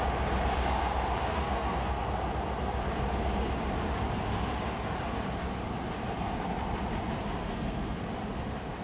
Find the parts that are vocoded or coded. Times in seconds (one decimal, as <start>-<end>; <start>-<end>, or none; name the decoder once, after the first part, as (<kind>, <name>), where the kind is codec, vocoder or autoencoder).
1.3-2.0 (codec, SNAC); 7.4-8.0